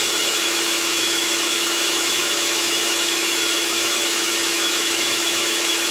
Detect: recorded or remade remade